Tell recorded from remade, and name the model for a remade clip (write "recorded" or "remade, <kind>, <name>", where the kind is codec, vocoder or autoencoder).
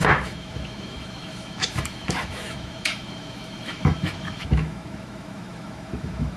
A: remade, autoencoder, DAC-VAE